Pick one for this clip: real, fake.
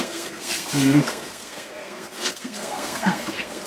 fake